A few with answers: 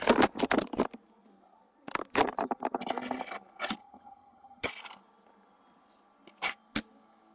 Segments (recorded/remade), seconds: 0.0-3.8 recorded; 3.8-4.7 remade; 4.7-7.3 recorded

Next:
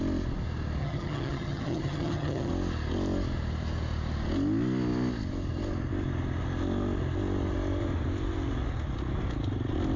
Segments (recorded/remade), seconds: 0.0-0.8 recorded; 0.8-2.5 remade; 2.5-10.0 recorded

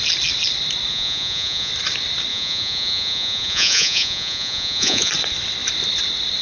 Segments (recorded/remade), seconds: 0.0-0.9 recorded; 0.9-1.7 remade; 1.7-2.3 recorded; 2.3-5.1 remade; 5.1-6.4 recorded

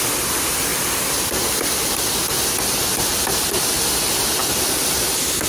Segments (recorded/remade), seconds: 0.0-5.5 recorded

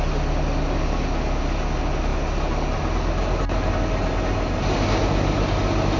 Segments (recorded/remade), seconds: 0.0-6.0 recorded